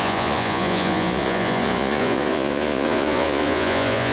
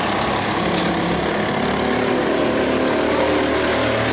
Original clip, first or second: second